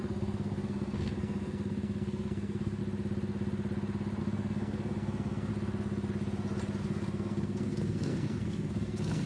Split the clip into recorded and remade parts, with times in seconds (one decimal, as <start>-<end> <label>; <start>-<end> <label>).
0.0-2.8 remade; 2.8-4.2 recorded; 4.2-5.5 remade; 5.5-6.8 recorded; 6.8-9.3 remade